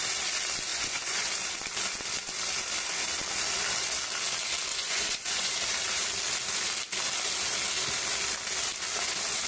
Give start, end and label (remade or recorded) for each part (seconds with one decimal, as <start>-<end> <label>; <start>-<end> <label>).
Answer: 0.0-0.7 recorded; 0.7-1.3 remade; 1.3-4.7 recorded; 4.7-5.5 remade; 5.5-9.5 recorded